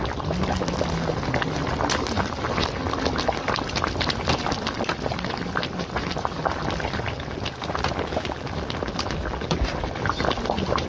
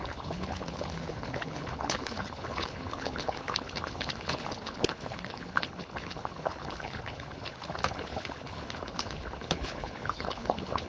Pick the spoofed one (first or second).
second